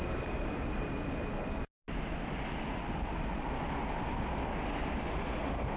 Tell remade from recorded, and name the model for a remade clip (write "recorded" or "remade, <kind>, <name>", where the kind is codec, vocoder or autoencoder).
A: recorded